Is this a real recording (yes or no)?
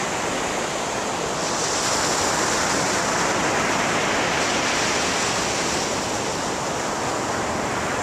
yes